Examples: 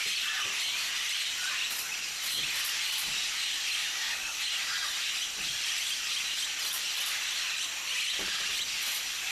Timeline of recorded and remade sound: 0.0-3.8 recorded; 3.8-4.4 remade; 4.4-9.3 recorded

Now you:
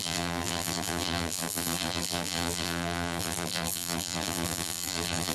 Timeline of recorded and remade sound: 0.0-5.3 remade

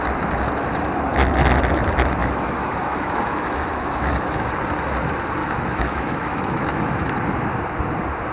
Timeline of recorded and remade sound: 0.0-2.2 recorded; 2.2-4.5 remade; 4.5-5.4 recorded; 5.4-7.1 remade; 7.1-8.3 recorded

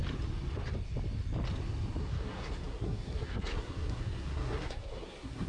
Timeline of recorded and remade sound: 0.0-2.0 recorded; 2.0-5.5 remade

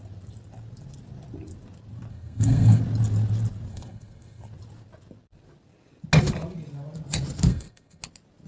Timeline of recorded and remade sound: 0.0-2.1 recorded; 2.1-2.8 remade; 2.8-3.7 recorded; 3.7-4.5 remade; 4.5-7.5 recorded; 7.5-8.0 remade; 8.0-8.5 recorded

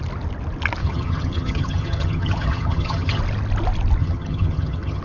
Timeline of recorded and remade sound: 0.0-0.8 recorded; 0.8-3.2 remade; 3.2-4.0 recorded; 4.0-5.0 remade

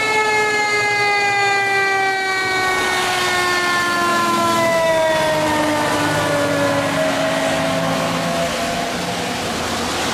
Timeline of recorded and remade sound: 0.0-4.1 recorded; 4.1-4.9 remade; 4.9-10.1 recorded

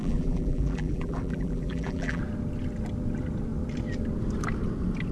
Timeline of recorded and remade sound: 0.0-2.2 remade; 2.2-5.1 recorded